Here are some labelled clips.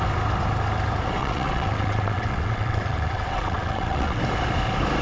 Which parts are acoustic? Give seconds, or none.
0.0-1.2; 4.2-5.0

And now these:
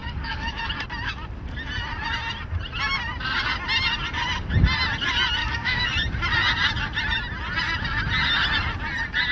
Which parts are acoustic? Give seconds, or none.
0.6-5.4; 5.9-9.3

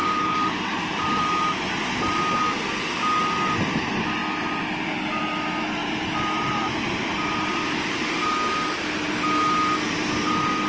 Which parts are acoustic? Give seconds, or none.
2.4-5.8; 8.5-10.7